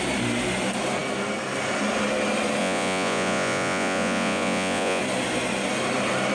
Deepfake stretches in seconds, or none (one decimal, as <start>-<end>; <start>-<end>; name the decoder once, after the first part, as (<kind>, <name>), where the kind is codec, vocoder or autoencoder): 2.6-5.0 (vocoder, Vocos)